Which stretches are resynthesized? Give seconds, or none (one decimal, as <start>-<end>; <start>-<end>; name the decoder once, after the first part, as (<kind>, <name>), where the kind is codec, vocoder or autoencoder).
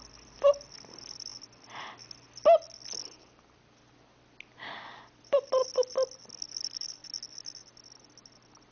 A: 0.0-1.3 (vocoder, BigVGAN v2); 5.0-5.6; 6.5-7.0